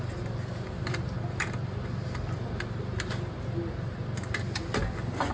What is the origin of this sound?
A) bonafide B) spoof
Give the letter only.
A